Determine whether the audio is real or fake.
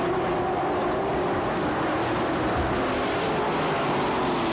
real